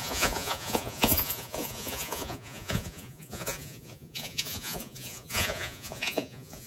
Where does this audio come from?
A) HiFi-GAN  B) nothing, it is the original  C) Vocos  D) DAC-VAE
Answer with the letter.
C